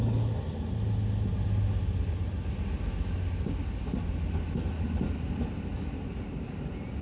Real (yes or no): yes